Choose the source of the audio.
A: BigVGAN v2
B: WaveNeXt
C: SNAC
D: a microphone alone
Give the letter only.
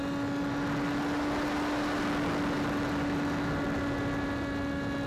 D